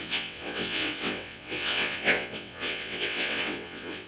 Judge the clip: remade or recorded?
remade